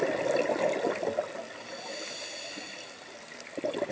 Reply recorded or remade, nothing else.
recorded